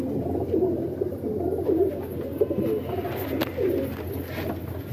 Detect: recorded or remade recorded